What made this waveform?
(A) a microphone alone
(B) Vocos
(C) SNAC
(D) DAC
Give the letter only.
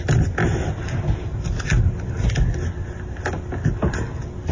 A